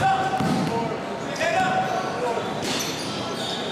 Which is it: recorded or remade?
recorded